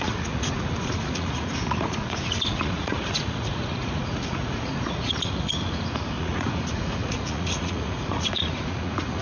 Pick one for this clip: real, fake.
fake